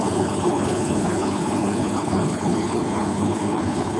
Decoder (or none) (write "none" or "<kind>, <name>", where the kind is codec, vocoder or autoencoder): codec, HILCodec